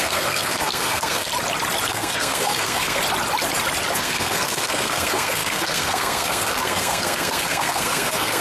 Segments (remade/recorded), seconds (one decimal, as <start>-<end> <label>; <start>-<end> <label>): 0.0-1.3 remade; 1.3-1.9 recorded; 1.9-3.0 remade; 3.0-3.9 recorded; 3.9-8.4 remade